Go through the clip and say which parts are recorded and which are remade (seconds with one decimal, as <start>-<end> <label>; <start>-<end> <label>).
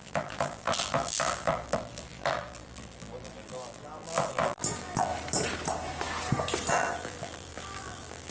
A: 0.0-5.1 remade; 5.1-6.7 recorded; 6.7-8.3 remade